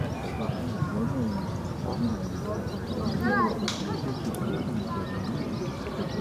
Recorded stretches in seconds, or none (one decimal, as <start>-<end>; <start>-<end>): 0.0-6.2